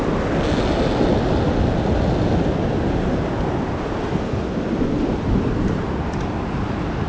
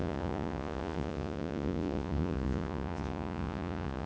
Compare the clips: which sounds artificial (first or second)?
second